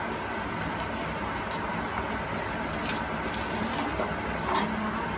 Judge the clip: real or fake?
real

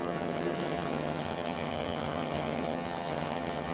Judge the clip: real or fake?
fake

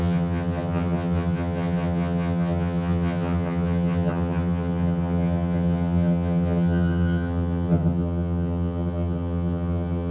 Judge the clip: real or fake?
fake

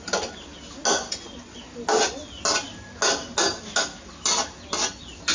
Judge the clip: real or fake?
real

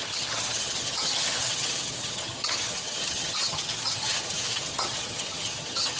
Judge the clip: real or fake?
fake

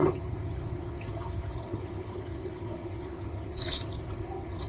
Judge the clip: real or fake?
fake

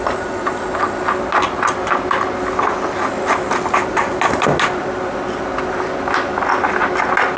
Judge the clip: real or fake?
real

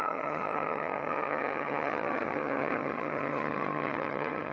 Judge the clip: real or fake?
fake